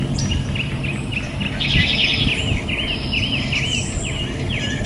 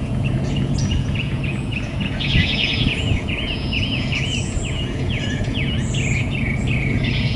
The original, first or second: first